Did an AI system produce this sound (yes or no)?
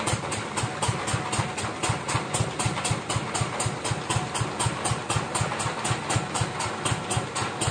no